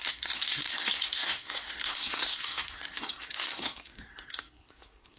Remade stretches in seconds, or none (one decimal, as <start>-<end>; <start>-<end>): 0.0-5.2